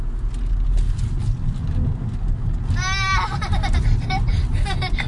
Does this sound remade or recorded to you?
recorded